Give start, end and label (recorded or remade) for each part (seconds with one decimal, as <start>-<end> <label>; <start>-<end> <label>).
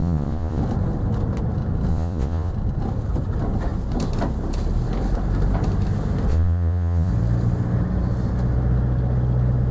0.0-0.6 remade; 0.6-1.9 recorded; 1.9-2.5 remade; 2.5-6.3 recorded; 6.3-7.1 remade; 7.1-9.7 recorded